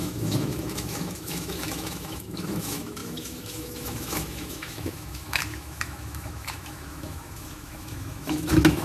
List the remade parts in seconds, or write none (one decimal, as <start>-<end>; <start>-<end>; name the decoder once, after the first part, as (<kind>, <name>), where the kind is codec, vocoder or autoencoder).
0.0-8.8 (autoencoder, DAC-VAE)